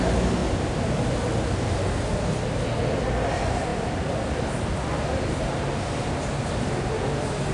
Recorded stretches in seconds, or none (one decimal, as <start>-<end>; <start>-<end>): 0.0-7.5